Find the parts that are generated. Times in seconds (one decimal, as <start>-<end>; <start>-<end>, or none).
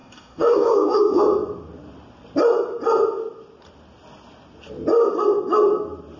0.0-1.2